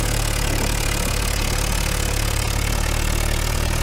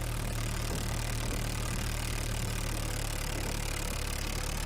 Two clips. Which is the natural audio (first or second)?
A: second